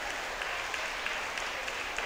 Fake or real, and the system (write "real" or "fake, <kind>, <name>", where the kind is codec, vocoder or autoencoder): real